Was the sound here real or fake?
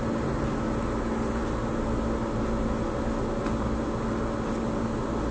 real